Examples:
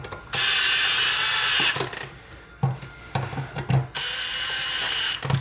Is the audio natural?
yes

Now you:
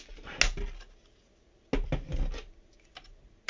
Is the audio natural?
yes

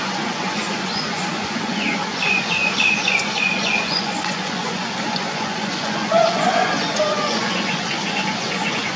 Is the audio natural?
no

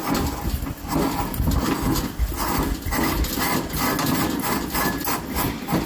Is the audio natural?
yes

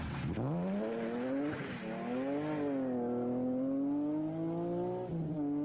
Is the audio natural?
yes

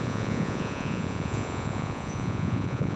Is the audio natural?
no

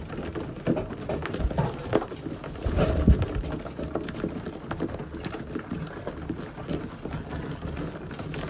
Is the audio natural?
yes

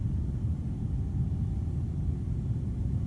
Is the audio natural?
yes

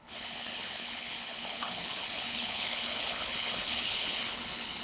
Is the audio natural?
no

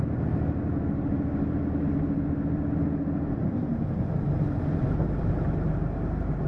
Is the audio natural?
yes